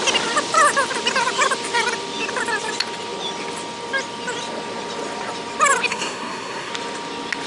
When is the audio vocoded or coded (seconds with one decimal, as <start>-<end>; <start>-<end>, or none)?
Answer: 5.9-6.7